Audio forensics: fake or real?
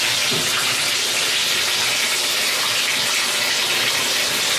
real